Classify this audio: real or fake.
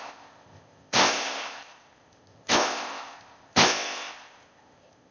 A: fake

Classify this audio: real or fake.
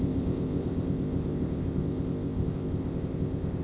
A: fake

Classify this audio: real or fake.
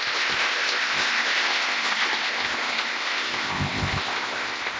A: fake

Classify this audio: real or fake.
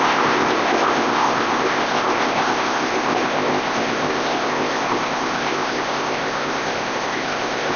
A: fake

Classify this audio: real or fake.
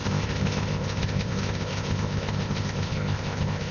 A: fake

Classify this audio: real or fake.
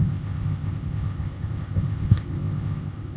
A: fake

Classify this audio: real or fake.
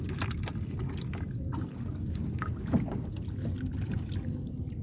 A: real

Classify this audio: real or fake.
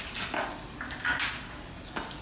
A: real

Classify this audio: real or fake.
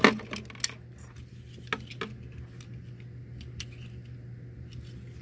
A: real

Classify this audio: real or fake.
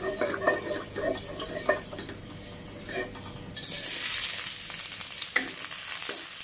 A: real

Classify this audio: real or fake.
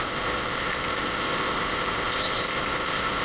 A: fake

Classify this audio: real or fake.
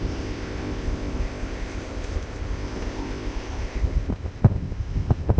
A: fake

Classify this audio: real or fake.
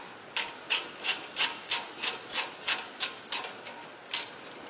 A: real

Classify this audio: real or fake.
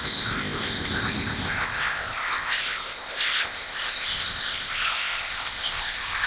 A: fake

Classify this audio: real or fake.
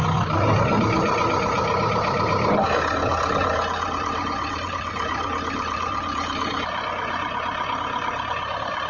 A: real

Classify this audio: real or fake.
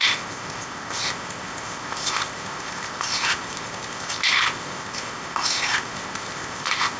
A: fake